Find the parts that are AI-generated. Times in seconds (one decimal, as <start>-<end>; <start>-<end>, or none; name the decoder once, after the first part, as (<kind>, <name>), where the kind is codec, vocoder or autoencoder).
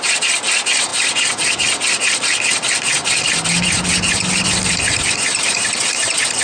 none